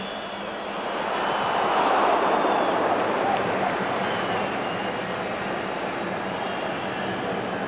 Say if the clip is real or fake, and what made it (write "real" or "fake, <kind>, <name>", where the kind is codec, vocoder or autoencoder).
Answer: real